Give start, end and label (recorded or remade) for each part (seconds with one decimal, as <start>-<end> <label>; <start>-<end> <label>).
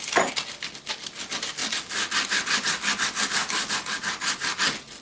0.0-5.0 recorded